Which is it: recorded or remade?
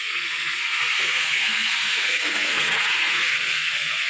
remade